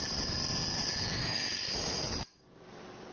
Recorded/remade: recorded